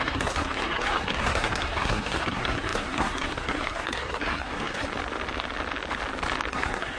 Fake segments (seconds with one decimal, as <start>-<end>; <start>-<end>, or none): 0.0-4.9; 6.5-7.0